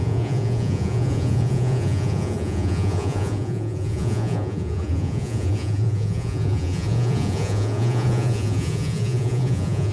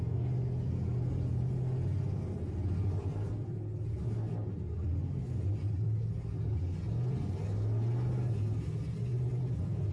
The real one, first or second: second